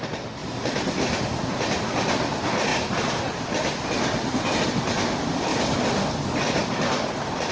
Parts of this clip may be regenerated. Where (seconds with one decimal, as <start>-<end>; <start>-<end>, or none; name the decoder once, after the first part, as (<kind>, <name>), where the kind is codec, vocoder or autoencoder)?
0.4-1.3 (vocoder, BigVGAN v2); 2.7-3.2; 5.5-7.5